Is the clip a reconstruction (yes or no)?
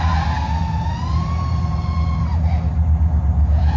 no